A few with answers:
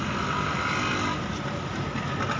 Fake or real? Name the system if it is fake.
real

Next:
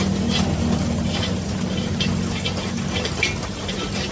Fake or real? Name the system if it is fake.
real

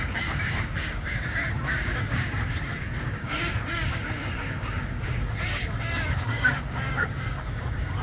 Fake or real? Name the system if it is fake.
fake, codec, DAC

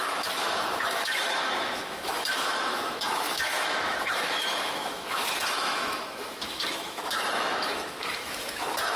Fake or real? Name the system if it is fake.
fake, autoencoder, DAC-VAE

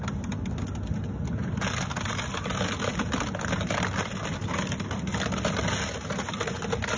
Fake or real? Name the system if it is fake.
real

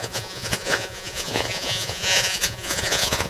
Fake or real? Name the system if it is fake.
fake, vocoder, Vocos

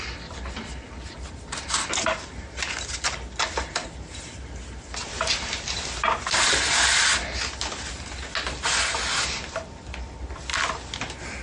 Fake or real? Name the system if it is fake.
real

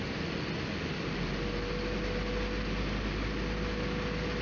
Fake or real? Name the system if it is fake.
real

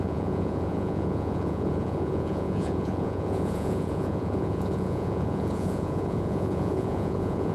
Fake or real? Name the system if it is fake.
fake, vocoder, Vocos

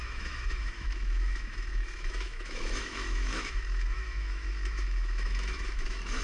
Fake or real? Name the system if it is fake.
fake, autoencoder, DAC-VAE